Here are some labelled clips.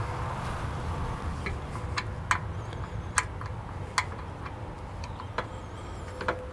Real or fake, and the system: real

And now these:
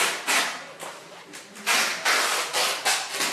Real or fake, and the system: real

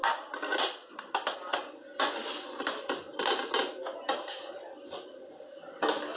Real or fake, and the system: real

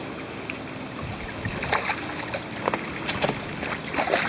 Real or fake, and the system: real